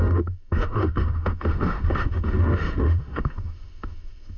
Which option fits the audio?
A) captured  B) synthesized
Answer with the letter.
B